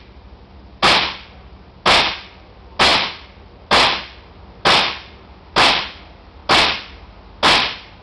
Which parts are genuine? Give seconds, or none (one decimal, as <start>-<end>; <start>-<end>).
0.0-8.0